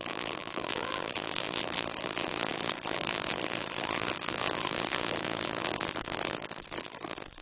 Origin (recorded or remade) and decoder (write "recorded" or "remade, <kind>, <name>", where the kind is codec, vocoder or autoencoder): remade, vocoder, BigVGAN v2